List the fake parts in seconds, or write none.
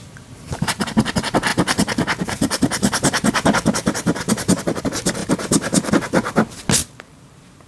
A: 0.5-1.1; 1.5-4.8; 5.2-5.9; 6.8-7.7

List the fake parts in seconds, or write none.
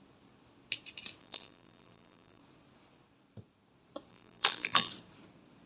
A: 1.2-2.4; 4.1-4.9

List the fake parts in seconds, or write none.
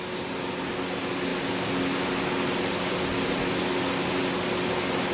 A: none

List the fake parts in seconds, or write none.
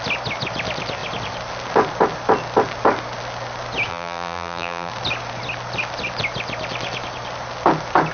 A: 3.9-4.9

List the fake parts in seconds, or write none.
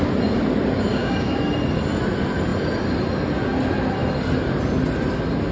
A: 0.9-1.4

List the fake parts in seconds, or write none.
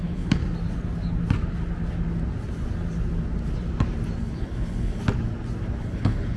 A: 0.0-0.4; 4.2-5.0; 5.8-6.4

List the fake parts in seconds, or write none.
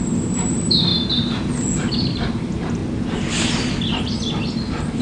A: 0.0-0.9; 2.1-2.8; 3.8-5.0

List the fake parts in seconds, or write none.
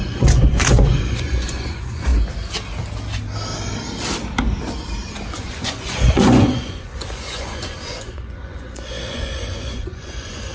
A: 0.0-2.1; 5.3-10.5